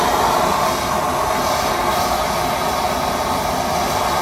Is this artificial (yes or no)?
no